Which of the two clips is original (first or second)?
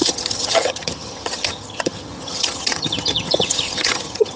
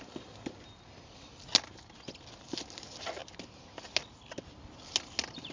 second